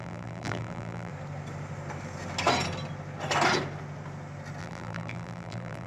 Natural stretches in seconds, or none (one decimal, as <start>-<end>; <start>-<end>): 1.1-4.6